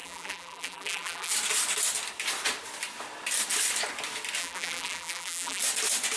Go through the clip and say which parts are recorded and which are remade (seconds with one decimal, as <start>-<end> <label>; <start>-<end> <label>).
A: 0.0-1.3 remade; 1.3-4.4 recorded; 4.4-5.6 remade; 5.6-6.2 recorded